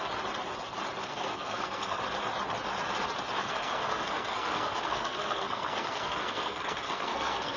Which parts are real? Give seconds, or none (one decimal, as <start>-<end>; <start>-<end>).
0.0-1.0; 2.0-3.4